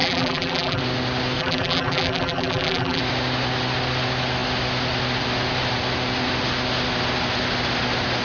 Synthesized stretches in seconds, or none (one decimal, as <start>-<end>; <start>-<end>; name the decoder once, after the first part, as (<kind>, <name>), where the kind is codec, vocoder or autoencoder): 0.0-0.8 (vocoder, BigVGAN v2); 1.4-3.0